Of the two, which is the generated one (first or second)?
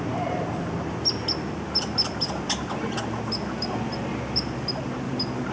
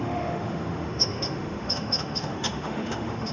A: second